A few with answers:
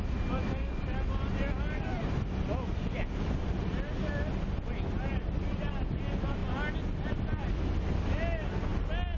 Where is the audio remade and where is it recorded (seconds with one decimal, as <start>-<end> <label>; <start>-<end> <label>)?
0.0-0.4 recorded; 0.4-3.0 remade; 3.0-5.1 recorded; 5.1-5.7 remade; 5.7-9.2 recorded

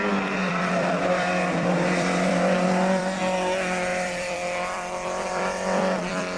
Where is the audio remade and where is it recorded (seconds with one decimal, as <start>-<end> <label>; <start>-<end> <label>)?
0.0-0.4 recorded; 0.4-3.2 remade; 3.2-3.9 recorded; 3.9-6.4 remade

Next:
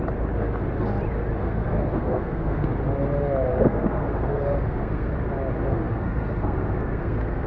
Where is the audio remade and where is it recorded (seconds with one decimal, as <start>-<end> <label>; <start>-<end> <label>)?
0.0-1.4 recorded; 1.4-2.7 remade; 2.7-3.5 recorded; 3.5-5.1 remade; 5.1-5.7 recorded; 5.7-7.5 remade

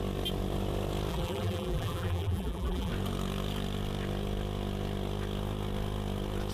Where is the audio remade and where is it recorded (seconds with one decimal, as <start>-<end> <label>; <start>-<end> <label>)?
0.0-1.1 recorded; 1.1-2.9 remade; 2.9-6.5 recorded

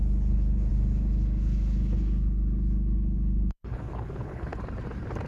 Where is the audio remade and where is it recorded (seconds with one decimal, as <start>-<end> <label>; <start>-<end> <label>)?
0.0-4.5 remade; 4.5-5.3 recorded

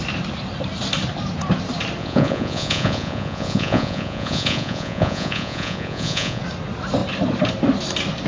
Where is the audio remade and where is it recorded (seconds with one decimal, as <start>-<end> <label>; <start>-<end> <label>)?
0.0-2.0 recorded; 2.0-6.4 remade; 6.4-8.3 recorded